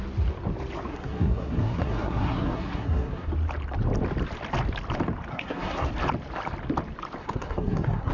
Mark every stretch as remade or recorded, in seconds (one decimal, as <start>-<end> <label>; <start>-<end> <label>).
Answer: 0.0-0.9 recorded; 0.9-3.3 remade; 3.3-5.3 recorded; 5.3-5.9 remade; 5.9-7.2 recorded; 7.2-8.1 remade